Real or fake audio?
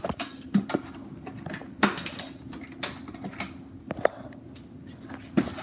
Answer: real